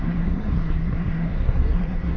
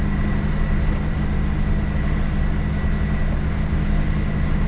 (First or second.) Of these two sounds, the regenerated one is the first